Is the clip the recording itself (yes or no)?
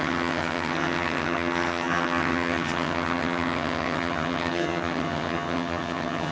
no